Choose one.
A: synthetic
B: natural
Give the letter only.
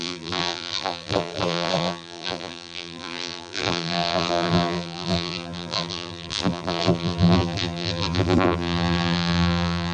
A